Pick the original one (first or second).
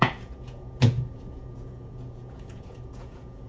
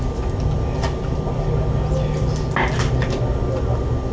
second